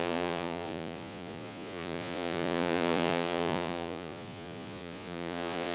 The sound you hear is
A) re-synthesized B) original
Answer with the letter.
A